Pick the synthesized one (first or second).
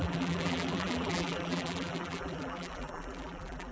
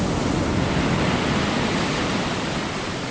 first